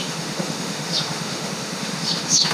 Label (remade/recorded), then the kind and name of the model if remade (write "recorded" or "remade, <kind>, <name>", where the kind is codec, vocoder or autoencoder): remade, autoencoder, DAC-VAE